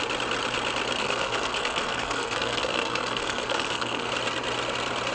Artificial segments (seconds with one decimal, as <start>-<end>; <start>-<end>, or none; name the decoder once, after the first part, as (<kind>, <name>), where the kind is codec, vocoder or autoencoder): 1.0-4.1 (codec, SNAC)